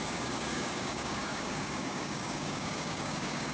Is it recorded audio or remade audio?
remade